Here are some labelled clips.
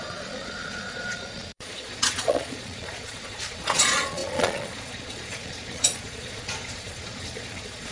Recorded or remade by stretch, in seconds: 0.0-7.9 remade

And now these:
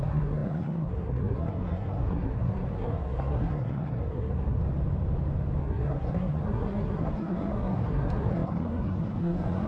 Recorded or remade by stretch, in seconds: 0.0-4.6 remade; 4.6-5.6 recorded; 5.6-9.7 remade

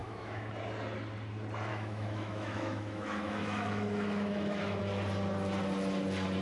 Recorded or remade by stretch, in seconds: 0.0-0.5 remade; 0.5-1.7 recorded; 1.7-4.8 remade; 4.8-6.4 recorded

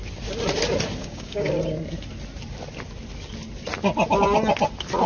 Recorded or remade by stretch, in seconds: 0.0-1.0 recorded; 1.0-1.5 remade; 1.5-5.1 recorded

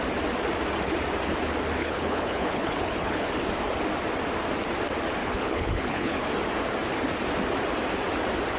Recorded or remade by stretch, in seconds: 0.0-1.8 recorded; 1.8-3.3 remade; 3.3-5.2 recorded; 5.2-6.3 remade; 6.3-8.6 recorded

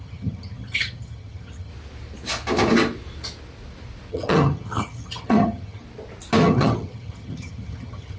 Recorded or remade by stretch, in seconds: 0.0-1.7 remade; 1.7-4.1 recorded; 4.1-5.8 remade; 5.8-6.4 recorded; 6.4-8.2 remade